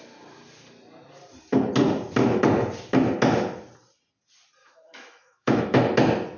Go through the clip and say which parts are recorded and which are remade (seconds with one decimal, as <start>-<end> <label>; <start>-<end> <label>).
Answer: 0.0-4.6 recorded; 4.6-5.8 remade; 5.8-6.4 recorded